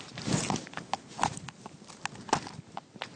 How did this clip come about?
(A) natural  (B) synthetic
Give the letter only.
A